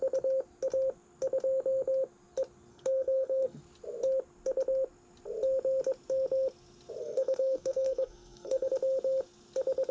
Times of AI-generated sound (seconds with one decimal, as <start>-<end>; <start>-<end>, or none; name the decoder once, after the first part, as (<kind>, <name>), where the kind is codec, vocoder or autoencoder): 2.7-3.6 (codec, SNAC); 7.0-8.7